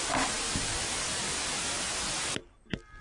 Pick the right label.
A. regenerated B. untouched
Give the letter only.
B